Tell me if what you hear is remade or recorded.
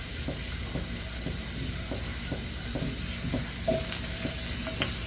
recorded